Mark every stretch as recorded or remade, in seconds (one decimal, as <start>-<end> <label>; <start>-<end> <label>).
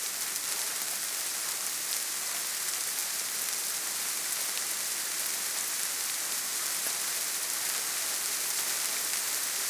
0.0-9.7 recorded